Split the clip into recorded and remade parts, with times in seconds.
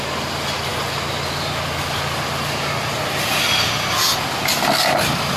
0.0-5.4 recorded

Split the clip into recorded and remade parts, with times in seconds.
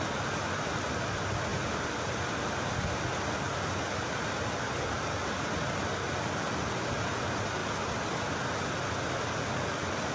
0.0-10.1 recorded